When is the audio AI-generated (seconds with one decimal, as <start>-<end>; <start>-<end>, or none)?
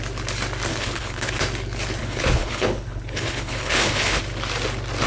0.7-1.3; 2.0-4.2